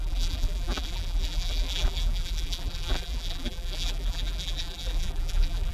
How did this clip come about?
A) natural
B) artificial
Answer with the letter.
B